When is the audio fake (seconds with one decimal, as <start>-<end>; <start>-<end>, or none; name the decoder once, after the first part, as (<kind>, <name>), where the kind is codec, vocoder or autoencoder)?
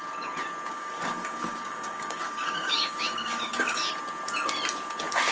0.7-3.9 (codec, DAC)